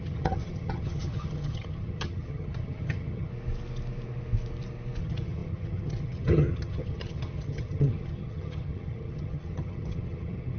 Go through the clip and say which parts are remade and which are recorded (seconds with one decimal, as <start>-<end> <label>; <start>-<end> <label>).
0.0-3.3 remade; 3.3-5.0 recorded; 5.0-10.6 remade